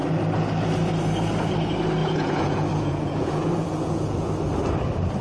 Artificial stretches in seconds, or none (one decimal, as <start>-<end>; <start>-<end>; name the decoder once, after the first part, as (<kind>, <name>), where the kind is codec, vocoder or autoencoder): 2.0-4.3 (vocoder, Vocos)